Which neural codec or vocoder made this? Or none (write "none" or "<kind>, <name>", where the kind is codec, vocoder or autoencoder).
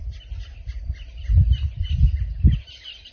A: none